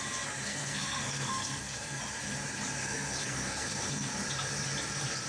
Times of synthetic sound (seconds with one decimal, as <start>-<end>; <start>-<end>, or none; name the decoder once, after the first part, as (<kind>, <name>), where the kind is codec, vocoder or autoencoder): 0.5-2.0 (codec, SNAC); 2.8-4.1